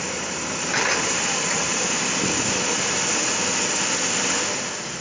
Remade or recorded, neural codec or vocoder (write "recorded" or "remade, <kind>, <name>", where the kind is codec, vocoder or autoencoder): recorded